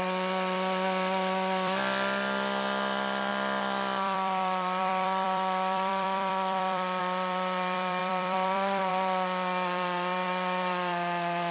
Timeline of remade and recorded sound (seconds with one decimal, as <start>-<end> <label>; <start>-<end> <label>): 0.0-11.5 remade